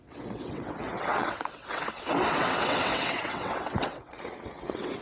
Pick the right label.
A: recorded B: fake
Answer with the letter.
B